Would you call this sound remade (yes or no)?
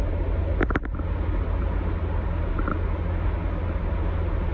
no